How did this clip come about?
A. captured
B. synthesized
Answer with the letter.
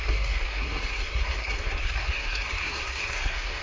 B